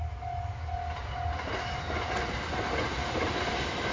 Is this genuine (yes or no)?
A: yes